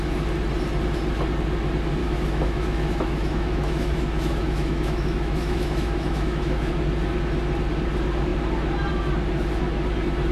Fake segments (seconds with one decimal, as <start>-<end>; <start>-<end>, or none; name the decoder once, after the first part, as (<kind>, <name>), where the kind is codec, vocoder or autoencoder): 2.0-6.7 (autoencoder, DAC-VAE)